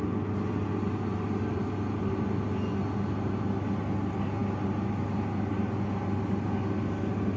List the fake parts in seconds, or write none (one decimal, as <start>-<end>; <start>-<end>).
none